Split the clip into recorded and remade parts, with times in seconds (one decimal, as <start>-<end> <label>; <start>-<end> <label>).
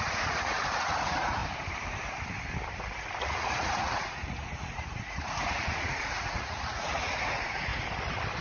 0.0-1.4 remade; 1.4-3.2 recorded; 3.2-7.7 remade; 7.7-8.4 recorded